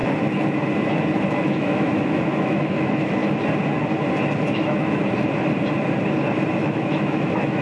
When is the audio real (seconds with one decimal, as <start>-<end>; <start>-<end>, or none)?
0.0-1.3; 3.2-4.4; 5.0-6.6